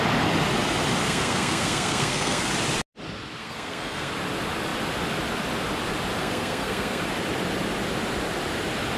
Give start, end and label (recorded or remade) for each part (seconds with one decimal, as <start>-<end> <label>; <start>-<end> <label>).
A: 0.0-1.0 recorded; 1.0-2.5 remade; 2.5-3.4 recorded; 3.4-4.1 remade; 4.1-6.2 recorded; 6.2-7.0 remade; 7.0-9.0 recorded